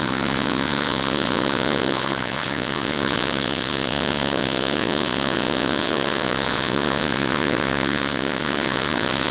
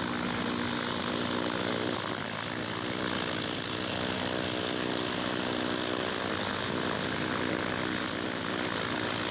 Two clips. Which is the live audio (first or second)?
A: second